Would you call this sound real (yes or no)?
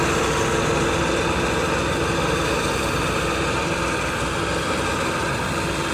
yes